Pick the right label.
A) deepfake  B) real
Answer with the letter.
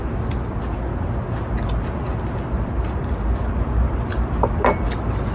B